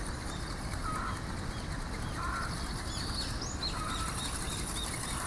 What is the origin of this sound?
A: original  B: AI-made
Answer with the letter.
A